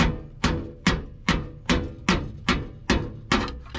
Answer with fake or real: real